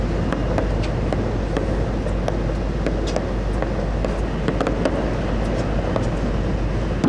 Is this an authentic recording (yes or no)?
yes